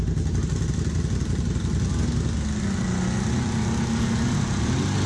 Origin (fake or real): real